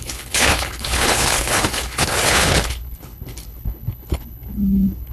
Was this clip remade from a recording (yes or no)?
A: yes